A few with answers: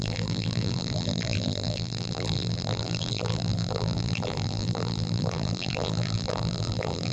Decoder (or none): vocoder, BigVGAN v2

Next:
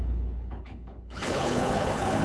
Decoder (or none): codec, HILCodec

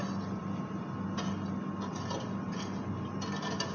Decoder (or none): none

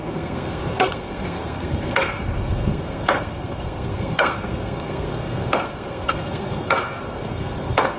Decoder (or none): codec, SNAC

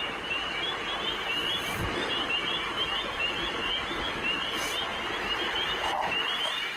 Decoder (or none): none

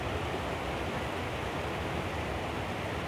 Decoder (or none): none